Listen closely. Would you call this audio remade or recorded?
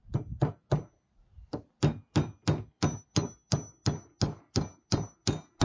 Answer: recorded